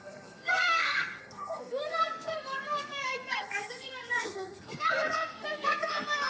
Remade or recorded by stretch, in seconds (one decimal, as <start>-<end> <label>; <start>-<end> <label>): 0.0-6.3 remade